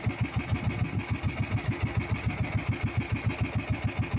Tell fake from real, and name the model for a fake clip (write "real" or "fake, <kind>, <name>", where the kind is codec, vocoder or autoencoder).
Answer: real